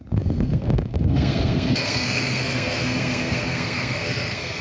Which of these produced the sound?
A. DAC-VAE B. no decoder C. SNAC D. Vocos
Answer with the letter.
C